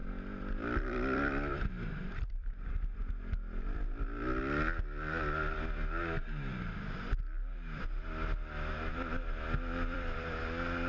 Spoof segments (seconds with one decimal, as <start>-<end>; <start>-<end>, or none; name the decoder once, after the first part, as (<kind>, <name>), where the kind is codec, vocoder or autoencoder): 0.0-3.0 (vocoder, BigVGAN v2); 8.9-10.4